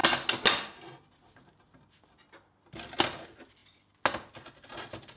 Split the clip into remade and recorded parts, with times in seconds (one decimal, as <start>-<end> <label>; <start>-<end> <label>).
0.0-5.2 recorded

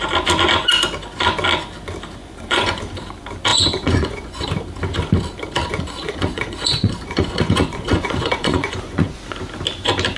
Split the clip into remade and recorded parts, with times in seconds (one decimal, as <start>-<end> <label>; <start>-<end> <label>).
0.0-2.2 recorded; 2.2-2.8 remade; 2.8-3.5 recorded; 3.5-4.5 remade; 4.5-5.7 recorded; 5.7-9.2 remade; 9.2-10.2 recorded

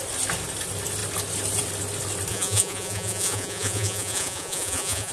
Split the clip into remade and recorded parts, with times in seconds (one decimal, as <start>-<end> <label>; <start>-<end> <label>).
0.0-2.3 recorded; 2.3-5.1 remade

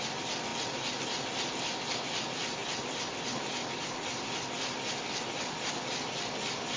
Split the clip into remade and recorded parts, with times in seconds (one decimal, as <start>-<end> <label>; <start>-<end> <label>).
0.0-6.8 recorded

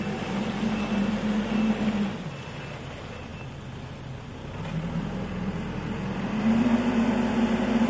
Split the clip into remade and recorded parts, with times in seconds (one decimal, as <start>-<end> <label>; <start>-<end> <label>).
0.0-7.9 recorded

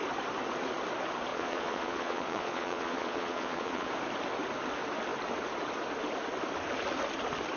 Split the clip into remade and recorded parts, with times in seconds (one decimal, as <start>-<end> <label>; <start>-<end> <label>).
0.0-1.3 recorded; 1.3-3.9 remade; 3.9-7.6 recorded

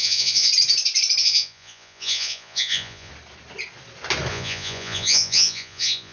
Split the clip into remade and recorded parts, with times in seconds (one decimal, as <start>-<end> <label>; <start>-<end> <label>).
0.0-0.5 remade; 0.5-1.2 recorded; 1.2-3.1 remade; 3.1-4.3 recorded; 4.3-6.1 remade